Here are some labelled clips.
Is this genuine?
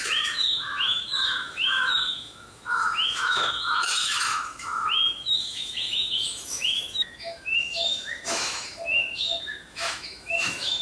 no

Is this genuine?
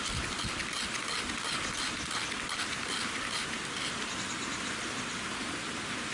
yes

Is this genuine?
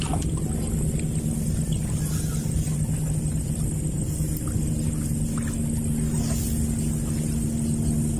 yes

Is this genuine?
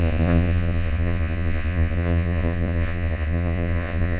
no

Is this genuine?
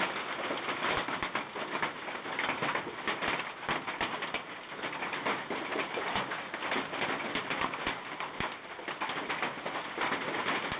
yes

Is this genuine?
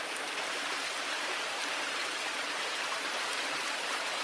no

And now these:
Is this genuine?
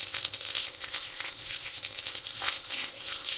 no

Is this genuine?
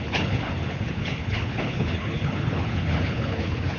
no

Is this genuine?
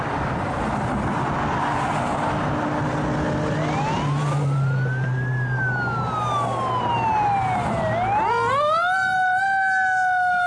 yes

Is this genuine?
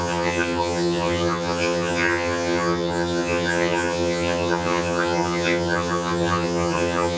no